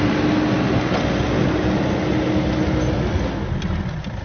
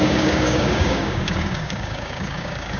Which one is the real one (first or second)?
first